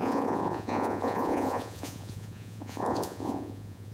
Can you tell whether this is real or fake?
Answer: fake